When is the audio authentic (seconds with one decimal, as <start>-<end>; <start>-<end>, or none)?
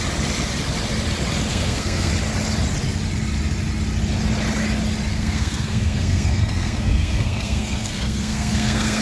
0.0-1.5; 2.1-5.1